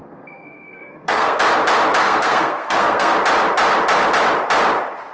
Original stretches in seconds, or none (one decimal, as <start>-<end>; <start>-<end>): 1.4-2.0; 3.1-5.1